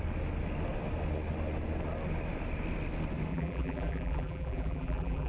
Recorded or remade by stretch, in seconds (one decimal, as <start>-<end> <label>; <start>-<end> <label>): 0.0-3.3 recorded; 3.3-5.3 remade